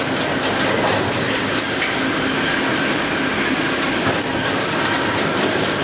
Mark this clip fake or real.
real